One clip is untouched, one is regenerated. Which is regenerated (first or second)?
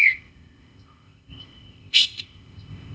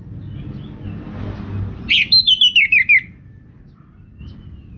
first